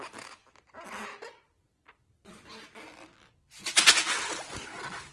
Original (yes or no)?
yes